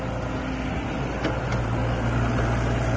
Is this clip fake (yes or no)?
no